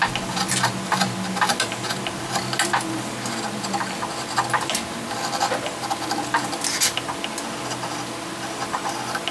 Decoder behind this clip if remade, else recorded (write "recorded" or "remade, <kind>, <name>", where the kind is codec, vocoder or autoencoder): recorded